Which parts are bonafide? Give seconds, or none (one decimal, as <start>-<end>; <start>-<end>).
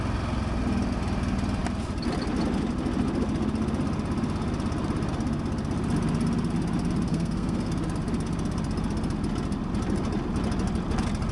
0.0-7.1; 7.7-11.3